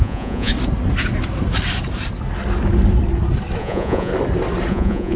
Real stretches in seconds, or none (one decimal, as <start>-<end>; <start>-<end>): 0.5-3.6; 4.1-4.7